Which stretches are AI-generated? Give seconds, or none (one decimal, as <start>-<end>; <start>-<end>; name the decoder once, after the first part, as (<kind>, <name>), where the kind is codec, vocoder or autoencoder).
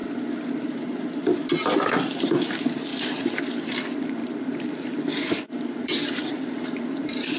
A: 0.6-1.3 (vocoder, BigVGAN v2); 2.2-2.9; 3.6-7.4